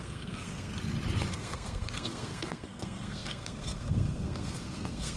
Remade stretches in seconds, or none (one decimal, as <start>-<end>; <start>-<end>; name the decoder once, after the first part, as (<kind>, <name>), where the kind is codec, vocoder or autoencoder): 0.0-0.7 (codec, SNAC); 1.3-5.2